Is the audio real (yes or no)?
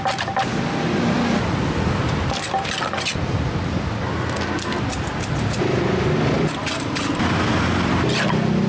yes